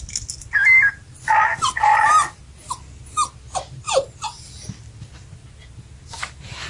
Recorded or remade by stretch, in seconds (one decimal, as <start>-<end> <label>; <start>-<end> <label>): 0.0-6.7 recorded